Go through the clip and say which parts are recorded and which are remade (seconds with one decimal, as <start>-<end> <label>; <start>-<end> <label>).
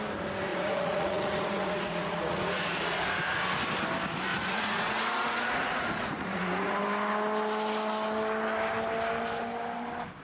0.0-0.5 recorded; 0.5-3.4 remade; 3.4-4.3 recorded; 4.3-6.8 remade; 6.8-10.2 recorded